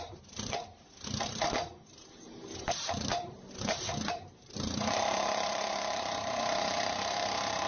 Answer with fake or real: fake